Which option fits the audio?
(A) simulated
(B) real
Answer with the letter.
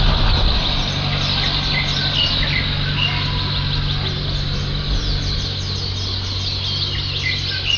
B